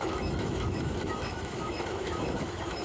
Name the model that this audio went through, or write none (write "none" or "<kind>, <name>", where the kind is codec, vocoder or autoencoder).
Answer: autoencoder, DAC-VAE